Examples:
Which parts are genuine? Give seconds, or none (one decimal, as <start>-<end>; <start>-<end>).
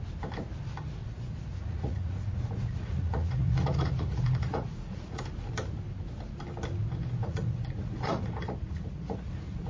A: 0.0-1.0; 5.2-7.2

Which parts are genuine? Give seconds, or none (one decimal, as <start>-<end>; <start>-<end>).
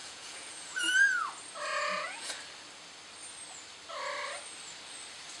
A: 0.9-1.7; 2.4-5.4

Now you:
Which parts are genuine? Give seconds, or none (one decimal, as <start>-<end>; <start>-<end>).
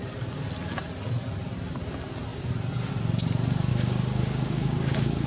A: 0.0-3.7